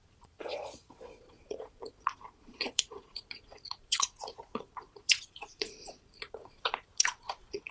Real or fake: fake